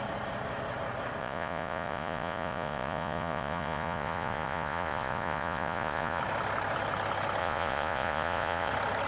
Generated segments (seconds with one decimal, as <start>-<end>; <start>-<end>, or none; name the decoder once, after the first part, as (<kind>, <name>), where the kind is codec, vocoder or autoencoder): 1.2-6.2 (vocoder, Vocos); 7.4-8.7